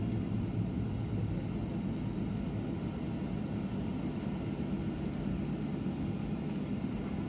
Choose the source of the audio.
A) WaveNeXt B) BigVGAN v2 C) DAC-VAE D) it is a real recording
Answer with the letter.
D